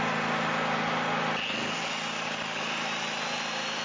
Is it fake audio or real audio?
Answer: real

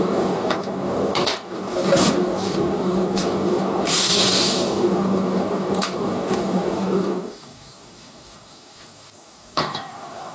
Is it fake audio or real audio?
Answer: fake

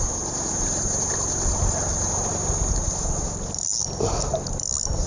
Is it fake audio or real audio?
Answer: real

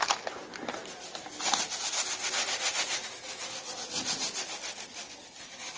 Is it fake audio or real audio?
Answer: real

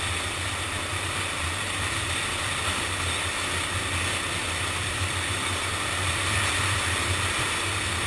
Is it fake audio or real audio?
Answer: real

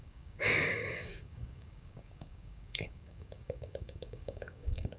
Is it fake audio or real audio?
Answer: fake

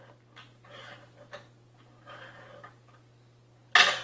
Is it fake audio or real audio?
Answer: real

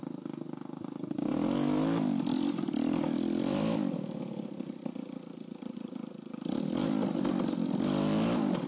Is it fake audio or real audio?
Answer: real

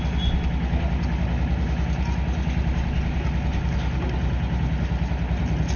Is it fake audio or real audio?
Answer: real